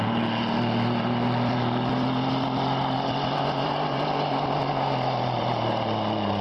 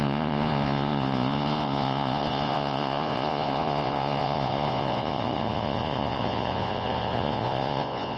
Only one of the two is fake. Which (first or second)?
second